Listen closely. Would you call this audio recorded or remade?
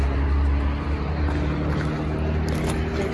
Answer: recorded